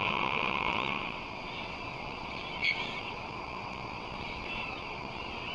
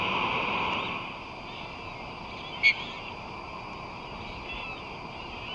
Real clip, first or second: second